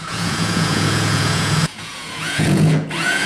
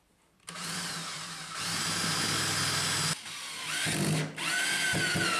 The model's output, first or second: first